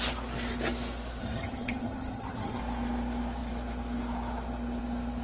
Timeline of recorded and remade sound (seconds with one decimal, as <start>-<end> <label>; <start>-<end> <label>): 0.0-1.2 recorded; 1.2-2.6 remade; 2.6-5.2 recorded